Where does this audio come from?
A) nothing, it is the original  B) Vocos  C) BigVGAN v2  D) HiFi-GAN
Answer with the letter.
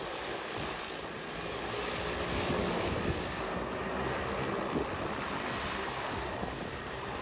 A